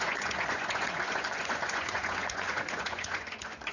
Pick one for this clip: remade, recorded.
remade